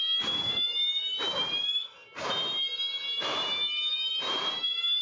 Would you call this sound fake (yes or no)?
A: no